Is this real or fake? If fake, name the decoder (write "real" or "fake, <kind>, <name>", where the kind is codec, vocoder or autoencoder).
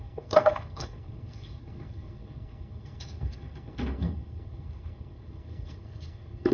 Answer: fake, codec, SNAC